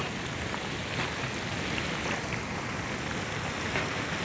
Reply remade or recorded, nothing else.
recorded